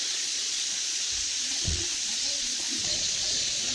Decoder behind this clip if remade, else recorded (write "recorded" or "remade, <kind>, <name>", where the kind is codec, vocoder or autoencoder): remade, vocoder, Vocos